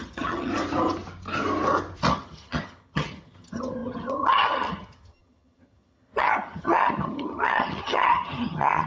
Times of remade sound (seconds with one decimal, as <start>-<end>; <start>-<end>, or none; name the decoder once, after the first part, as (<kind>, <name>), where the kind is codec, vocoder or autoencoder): 0.0-0.5 (vocoder, HiFi-GAN); 2.1-8.9